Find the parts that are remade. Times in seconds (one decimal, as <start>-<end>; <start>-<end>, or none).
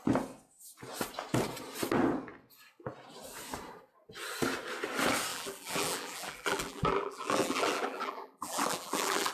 5.3-9.3